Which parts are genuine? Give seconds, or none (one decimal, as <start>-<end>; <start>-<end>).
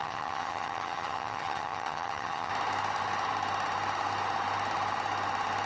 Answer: 2.5-5.7